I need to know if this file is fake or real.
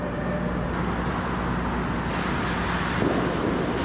real